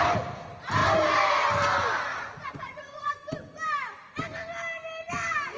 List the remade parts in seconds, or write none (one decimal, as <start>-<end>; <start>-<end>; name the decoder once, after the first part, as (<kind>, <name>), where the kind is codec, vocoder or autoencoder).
2.1-3.1 (vocoder, Vocos)